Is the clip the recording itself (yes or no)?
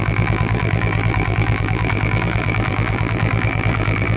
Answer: no